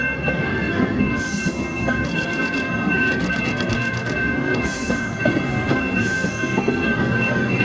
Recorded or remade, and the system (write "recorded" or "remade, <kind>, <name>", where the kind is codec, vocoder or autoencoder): remade, codec, SNAC